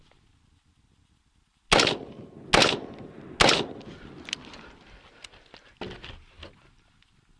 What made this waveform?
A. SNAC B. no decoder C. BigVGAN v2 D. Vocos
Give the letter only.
B